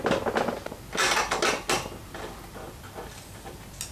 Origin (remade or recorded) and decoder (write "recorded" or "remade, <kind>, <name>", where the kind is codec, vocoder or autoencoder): recorded